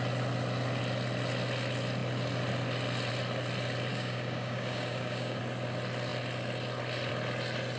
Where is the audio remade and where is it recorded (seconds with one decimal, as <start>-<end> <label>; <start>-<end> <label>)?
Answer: 0.0-3.9 recorded; 3.9-5.4 remade; 5.4-7.8 recorded